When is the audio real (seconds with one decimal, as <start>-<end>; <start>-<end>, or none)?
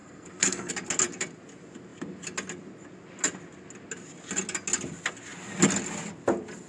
0.7-6.7